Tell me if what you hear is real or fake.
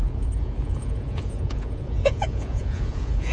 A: fake